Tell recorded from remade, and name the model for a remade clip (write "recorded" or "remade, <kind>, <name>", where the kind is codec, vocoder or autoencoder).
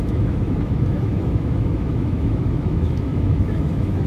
remade, autoencoder, DAC-VAE